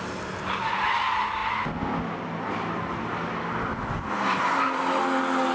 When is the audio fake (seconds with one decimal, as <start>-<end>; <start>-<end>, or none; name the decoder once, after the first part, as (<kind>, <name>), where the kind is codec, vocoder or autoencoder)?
none